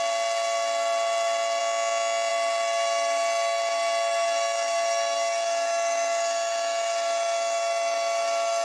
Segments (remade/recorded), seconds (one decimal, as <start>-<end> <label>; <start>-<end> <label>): 0.0-1.6 remade; 1.6-2.3 recorded; 2.3-8.6 remade